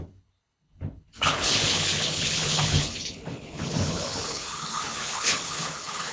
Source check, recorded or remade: remade